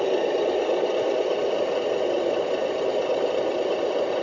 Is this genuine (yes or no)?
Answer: yes